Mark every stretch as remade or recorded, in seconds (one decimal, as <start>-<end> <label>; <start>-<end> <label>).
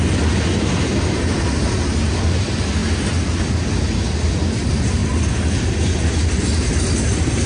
0.0-7.5 recorded